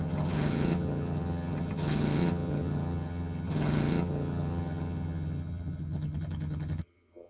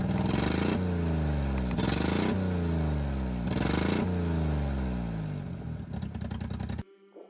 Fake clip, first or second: first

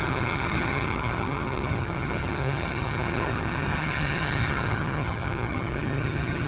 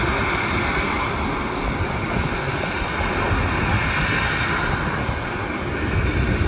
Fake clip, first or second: first